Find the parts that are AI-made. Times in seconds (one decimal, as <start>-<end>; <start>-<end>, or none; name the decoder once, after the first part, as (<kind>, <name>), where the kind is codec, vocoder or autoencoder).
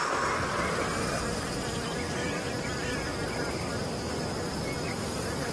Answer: none